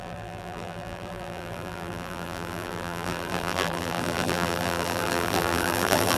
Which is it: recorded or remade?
remade